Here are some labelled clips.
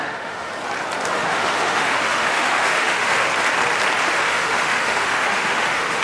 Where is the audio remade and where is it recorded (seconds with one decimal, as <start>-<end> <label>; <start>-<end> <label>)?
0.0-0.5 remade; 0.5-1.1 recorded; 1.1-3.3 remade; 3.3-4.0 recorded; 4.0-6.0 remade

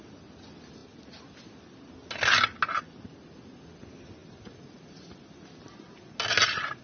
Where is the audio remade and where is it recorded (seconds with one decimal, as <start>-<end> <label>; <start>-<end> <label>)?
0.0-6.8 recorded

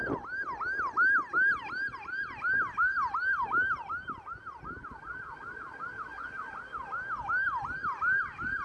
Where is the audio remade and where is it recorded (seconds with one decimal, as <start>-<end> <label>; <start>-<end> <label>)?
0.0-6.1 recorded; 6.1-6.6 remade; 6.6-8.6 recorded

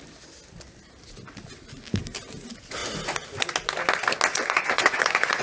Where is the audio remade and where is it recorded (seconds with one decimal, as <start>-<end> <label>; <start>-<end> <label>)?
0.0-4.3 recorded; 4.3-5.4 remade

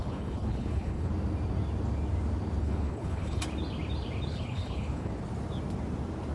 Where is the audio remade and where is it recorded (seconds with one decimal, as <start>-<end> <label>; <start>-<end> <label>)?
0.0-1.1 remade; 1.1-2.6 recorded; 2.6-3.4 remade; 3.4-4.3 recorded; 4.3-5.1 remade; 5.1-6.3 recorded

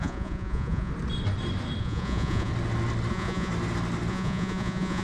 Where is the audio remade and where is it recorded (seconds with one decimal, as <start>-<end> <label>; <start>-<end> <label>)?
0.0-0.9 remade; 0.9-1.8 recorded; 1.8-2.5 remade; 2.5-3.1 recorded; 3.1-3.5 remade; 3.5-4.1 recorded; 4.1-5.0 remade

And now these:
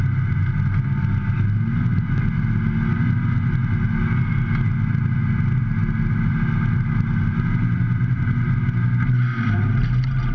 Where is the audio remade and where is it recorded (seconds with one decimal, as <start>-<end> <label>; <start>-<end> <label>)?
0.0-10.3 recorded